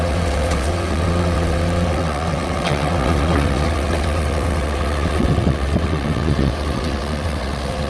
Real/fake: fake